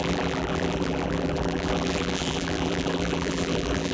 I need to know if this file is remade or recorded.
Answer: remade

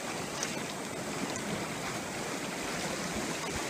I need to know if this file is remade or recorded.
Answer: recorded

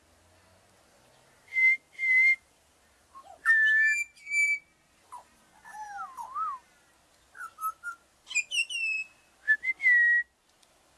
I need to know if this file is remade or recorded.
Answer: recorded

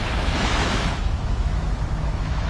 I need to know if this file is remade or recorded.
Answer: remade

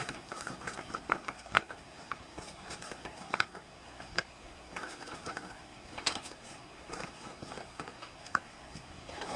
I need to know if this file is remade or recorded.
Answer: remade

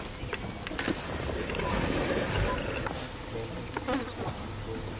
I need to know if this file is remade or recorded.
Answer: recorded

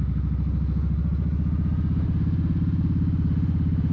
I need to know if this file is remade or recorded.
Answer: recorded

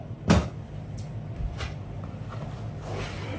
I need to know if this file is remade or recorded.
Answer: recorded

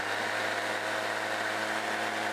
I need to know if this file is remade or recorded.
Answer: recorded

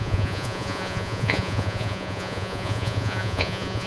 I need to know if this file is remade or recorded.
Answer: remade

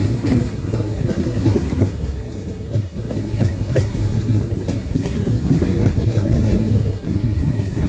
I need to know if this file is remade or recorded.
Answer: remade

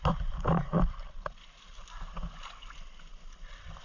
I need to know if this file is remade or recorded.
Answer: recorded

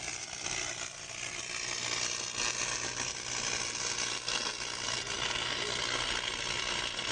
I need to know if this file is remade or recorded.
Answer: recorded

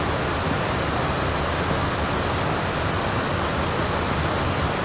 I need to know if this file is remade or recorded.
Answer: recorded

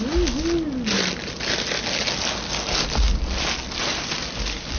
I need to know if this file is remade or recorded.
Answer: recorded